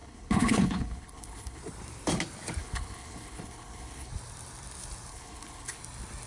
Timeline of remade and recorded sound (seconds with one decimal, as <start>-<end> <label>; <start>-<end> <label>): 0.0-1.6 remade; 1.6-2.6 recorded; 2.6-4.1 remade; 4.1-5.1 recorded; 5.1-5.8 remade; 5.8-6.3 recorded